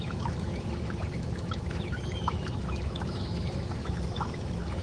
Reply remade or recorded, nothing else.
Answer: remade